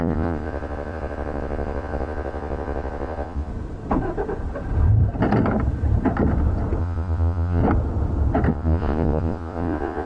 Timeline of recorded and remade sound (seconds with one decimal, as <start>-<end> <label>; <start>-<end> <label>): 0.0-3.5 remade; 3.5-6.8 recorded; 6.8-7.6 remade; 7.6-8.5 recorded; 8.5-10.1 remade